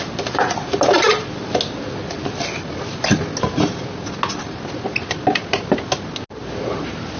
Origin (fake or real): real